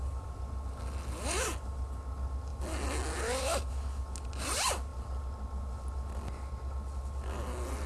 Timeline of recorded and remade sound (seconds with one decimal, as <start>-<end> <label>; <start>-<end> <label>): 0.0-7.9 recorded

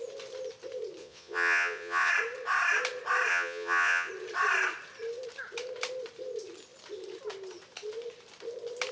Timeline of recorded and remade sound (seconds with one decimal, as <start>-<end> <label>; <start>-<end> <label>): 0.0-1.0 recorded; 1.0-2.1 remade; 2.1-3.3 recorded; 3.3-4.1 remade; 4.1-8.9 recorded

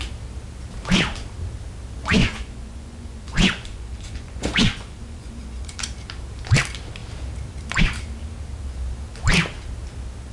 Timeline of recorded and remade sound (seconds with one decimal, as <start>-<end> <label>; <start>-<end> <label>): 0.0-2.2 recorded; 2.2-5.8 remade; 5.8-10.3 recorded

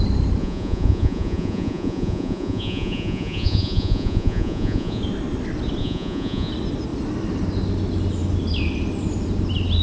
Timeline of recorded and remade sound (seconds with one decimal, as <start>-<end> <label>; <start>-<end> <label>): 0.0-0.4 recorded; 0.4-5.0 remade; 5.0-5.8 recorded; 5.8-6.5 remade; 6.5-9.8 recorded

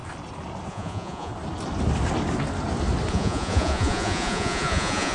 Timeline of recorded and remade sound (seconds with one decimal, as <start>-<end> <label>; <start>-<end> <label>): 0.0-0.7 recorded; 0.7-1.3 remade; 1.3-3.1 recorded; 3.1-5.1 remade

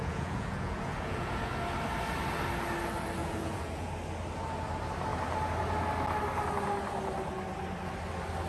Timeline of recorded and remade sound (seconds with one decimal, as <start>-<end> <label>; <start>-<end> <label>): 0.0-1.5 remade; 1.5-3.2 recorded; 3.2-3.9 remade; 3.9-8.5 recorded

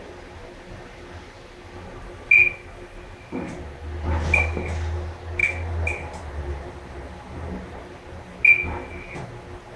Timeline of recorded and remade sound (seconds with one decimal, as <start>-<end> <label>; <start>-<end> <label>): 0.0-9.8 recorded

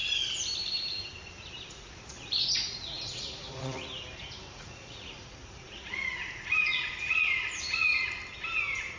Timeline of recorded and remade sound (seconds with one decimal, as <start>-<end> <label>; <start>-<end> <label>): 0.0-1.7 recorded; 1.7-3.9 remade; 3.9-4.5 recorded; 4.5-8.2 remade; 8.2-9.0 recorded